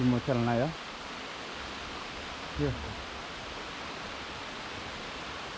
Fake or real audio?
real